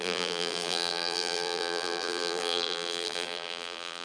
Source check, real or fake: fake